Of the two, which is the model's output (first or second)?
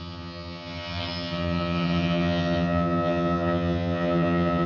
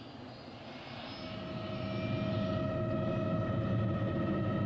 first